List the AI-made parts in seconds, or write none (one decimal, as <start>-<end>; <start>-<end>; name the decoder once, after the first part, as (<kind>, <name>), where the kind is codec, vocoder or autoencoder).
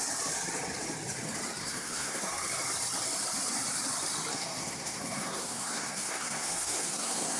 1.6-2.3 (codec, SNAC); 4.3-7.4